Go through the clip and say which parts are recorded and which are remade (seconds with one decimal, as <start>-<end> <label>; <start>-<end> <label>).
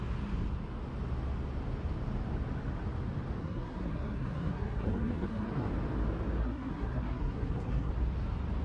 0.0-3.4 recorded; 3.4-5.7 remade; 5.7-6.4 recorded; 6.4-7.9 remade; 7.9-8.6 recorded